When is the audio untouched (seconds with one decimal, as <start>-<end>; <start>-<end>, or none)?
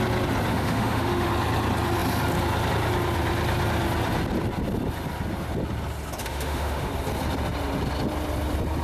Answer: 0.0-0.5; 1.3-6.2; 6.9-8.8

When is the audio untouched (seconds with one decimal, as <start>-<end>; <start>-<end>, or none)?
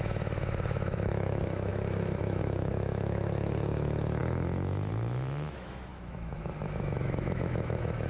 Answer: none